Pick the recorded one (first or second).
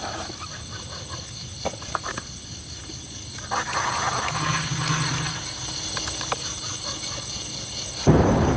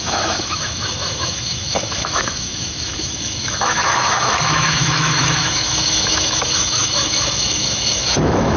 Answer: first